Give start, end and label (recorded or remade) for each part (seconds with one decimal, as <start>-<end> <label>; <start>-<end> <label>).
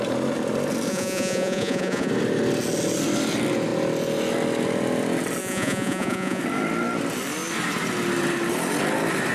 0.0-0.9 recorded; 0.9-2.1 remade; 2.1-5.4 recorded; 5.4-6.4 remade; 6.4-9.3 recorded